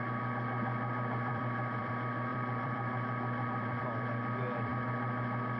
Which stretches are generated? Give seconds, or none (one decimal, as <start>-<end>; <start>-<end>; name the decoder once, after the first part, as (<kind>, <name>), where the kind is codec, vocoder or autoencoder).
1.3-1.9 (vocoder, BigVGAN v2); 2.3-3.8